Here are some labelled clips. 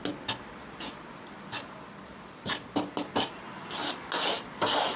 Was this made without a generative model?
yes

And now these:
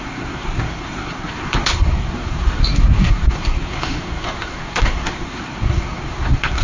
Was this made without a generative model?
no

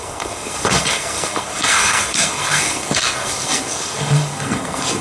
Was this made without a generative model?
no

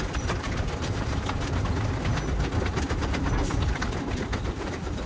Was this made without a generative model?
yes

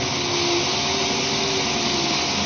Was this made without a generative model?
yes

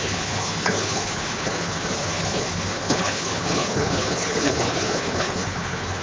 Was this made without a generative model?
no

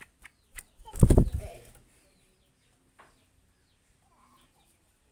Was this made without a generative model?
yes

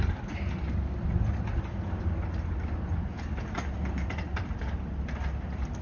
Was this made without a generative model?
yes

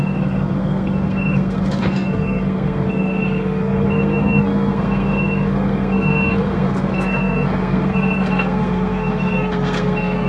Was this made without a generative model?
no